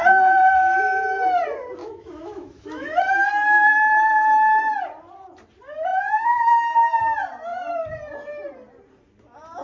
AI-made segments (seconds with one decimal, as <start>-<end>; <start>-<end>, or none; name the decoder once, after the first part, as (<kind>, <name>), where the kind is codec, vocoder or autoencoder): 1.8-3.0 (autoencoder, DAC-VAE); 5.9-7.0